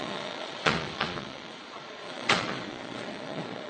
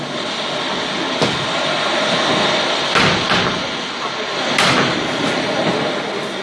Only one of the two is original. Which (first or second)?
second